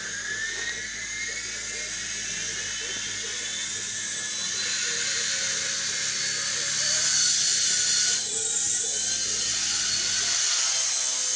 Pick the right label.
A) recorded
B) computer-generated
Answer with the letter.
A